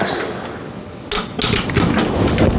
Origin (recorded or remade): recorded